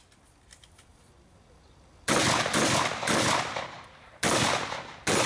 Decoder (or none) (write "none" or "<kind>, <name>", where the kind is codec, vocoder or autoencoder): none